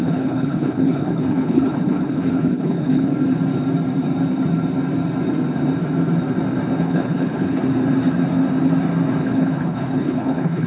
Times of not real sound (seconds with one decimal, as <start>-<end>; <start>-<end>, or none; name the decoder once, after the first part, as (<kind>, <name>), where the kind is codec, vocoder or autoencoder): 0.0-3.1 (codec, HILCodec); 6.8-7.6; 9.2-10.7